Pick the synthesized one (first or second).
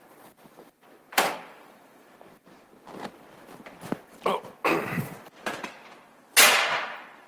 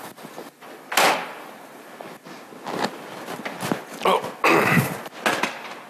first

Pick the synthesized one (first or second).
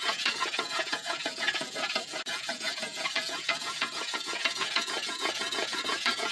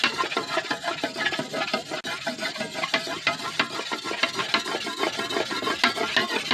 first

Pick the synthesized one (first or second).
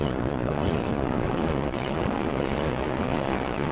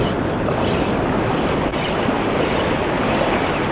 first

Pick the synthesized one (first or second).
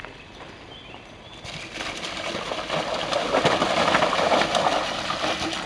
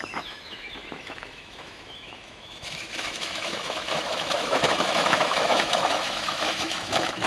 second